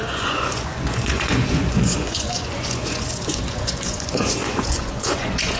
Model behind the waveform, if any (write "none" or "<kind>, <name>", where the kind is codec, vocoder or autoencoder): vocoder, Vocos